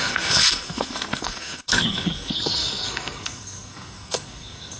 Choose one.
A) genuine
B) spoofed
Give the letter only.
B